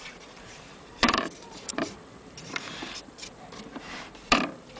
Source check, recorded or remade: remade